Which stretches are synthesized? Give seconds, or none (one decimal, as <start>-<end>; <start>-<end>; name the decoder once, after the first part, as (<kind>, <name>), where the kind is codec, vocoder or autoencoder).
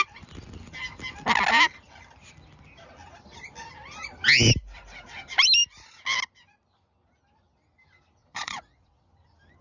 8.2-9.1 (vocoder, Vocos)